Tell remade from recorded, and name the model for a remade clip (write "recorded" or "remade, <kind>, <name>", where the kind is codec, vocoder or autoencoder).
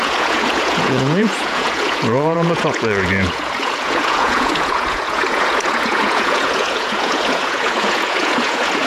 remade, vocoder, Vocos